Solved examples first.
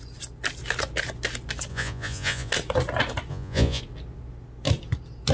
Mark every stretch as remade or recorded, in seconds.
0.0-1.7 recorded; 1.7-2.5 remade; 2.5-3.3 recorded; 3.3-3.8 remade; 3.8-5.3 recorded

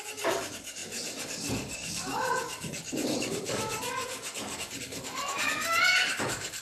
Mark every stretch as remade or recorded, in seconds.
0.0-6.6 remade